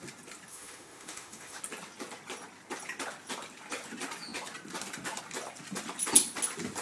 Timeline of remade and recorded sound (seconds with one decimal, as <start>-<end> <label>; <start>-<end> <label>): 0.0-0.5 recorded; 0.5-1.6 remade; 1.6-6.8 recorded